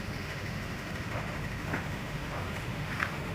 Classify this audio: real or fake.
fake